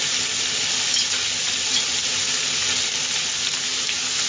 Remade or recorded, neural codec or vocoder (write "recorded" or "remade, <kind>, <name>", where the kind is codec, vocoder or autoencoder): recorded